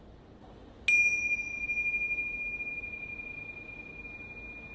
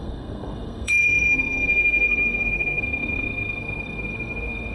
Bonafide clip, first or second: first